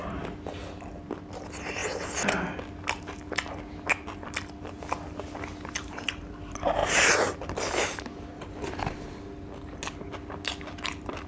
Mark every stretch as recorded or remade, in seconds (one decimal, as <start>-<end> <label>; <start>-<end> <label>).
0.0-11.3 recorded